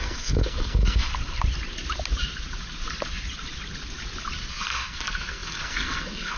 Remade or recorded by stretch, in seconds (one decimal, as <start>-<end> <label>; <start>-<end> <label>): 0.0-1.1 remade; 1.1-4.5 recorded; 4.5-6.4 remade